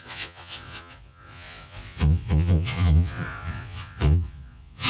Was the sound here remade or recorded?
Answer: remade